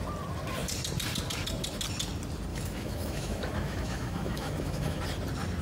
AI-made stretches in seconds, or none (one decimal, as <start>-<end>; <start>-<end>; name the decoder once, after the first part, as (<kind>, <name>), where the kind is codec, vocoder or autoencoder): 2.5-5.0 (autoencoder, DAC-VAE)